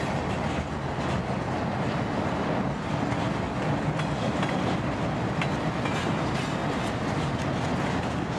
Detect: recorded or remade recorded